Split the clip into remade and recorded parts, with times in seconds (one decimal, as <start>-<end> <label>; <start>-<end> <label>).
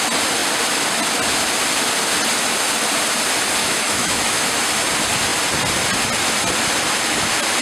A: 0.0-3.6 recorded; 3.6-4.4 remade; 4.4-7.6 recorded